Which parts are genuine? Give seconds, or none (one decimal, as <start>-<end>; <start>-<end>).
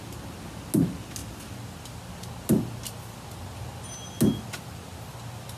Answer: 0.0-5.6